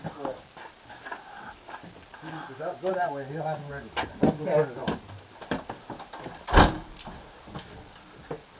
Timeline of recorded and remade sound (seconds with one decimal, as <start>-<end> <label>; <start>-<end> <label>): 0.0-8.6 recorded